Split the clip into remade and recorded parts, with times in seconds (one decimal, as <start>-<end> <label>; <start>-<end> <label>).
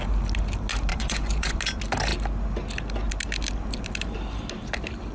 0.0-0.9 recorded; 0.9-1.6 remade; 1.6-5.1 recorded